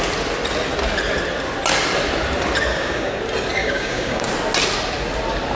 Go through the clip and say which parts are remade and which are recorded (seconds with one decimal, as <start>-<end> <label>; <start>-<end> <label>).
0.0-2.7 recorded; 2.7-3.2 remade; 3.2-3.6 recorded; 3.6-4.3 remade; 4.3-5.5 recorded